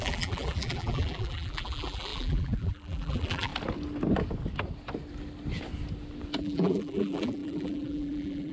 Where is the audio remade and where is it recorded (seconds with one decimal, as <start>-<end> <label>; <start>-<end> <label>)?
0.0-3.5 remade; 3.5-6.4 recorded; 6.4-8.5 remade